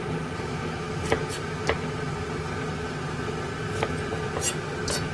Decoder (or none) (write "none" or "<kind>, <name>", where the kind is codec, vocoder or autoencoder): none